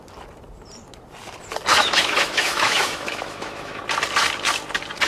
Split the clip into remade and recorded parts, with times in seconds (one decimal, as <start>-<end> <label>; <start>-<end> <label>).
0.0-1.7 recorded; 1.7-3.8 remade; 3.8-5.1 recorded